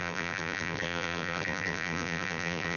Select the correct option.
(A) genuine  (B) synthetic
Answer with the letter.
B